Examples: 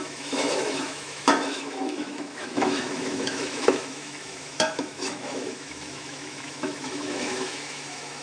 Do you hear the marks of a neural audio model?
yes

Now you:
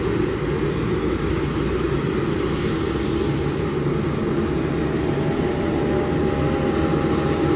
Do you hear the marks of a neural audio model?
no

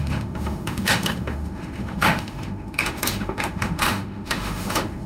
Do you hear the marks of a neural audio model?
yes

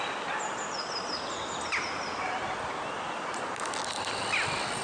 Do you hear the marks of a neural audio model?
no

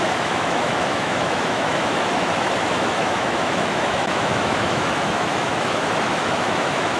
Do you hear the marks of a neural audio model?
yes